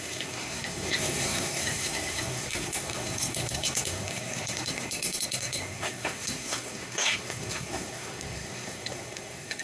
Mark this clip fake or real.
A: fake